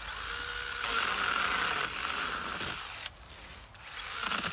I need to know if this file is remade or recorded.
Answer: recorded